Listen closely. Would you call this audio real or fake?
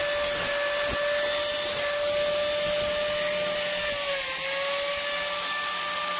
real